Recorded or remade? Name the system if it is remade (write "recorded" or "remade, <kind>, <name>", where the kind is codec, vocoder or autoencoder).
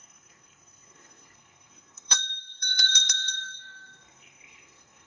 remade, codec, SNAC